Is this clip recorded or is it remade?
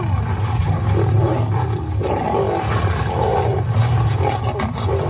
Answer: recorded